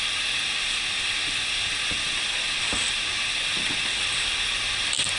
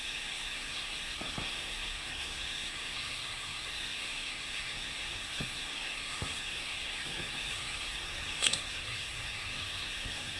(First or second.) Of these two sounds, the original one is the first